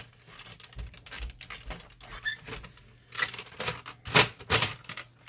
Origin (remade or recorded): recorded